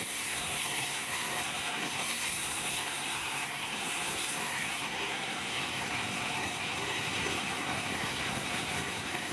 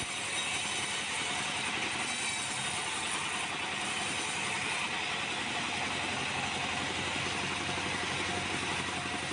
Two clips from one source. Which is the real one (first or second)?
second